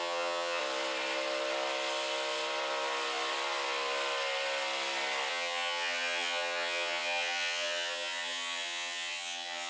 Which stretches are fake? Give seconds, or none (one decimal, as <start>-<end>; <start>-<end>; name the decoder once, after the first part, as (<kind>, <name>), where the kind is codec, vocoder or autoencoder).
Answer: 0.0-0.6 (vocoder, HiFi-GAN); 5.3-9.7